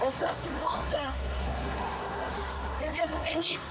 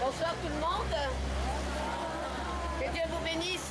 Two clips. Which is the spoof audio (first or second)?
first